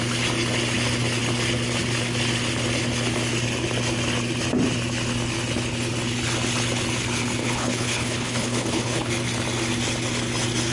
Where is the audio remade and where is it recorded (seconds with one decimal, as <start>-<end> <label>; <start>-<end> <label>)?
0.0-7.4 recorded; 7.4-9.1 remade; 9.1-10.7 recorded